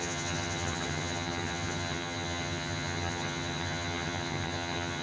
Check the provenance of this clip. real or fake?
fake